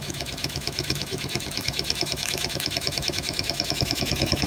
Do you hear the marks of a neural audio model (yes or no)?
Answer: yes